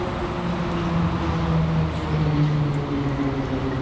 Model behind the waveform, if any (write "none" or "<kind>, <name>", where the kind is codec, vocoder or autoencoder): none